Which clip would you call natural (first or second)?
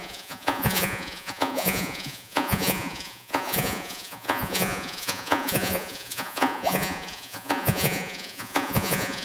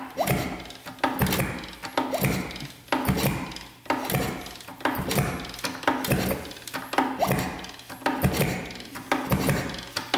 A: second